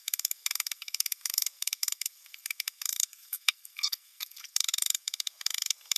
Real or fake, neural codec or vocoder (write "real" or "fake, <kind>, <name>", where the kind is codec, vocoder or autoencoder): fake, codec, SNAC